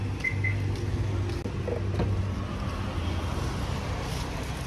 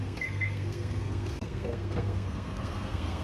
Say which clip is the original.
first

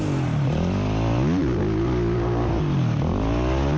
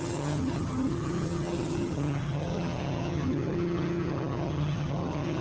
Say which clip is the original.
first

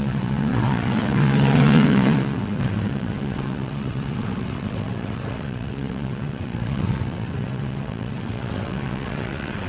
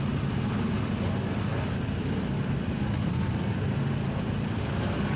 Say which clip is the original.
second